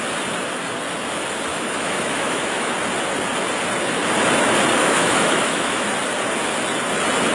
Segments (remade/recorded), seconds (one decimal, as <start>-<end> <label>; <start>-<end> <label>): 0.0-1.5 recorded; 1.5-2.7 remade; 2.7-4.8 recorded; 4.8-5.9 remade; 5.9-7.3 recorded